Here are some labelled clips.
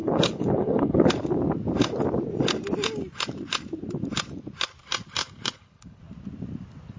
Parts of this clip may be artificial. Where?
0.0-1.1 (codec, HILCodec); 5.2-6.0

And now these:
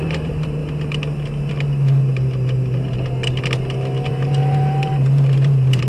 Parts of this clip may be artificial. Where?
0.0-0.6 (vocoder, BigVGAN v2); 4.1-5.9

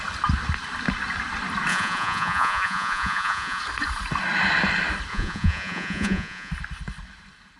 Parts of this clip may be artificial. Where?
1.7-3.6 (vocoder, Vocos); 5.1-6.5

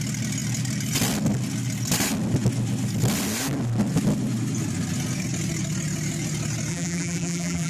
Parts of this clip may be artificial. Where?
6.7-7.7 (vocoder, BigVGAN v2)